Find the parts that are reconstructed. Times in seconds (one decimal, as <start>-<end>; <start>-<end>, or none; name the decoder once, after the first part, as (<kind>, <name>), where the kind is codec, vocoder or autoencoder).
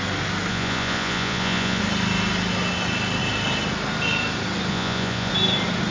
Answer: 0.5-1.8 (vocoder, Vocos); 4.7-5.3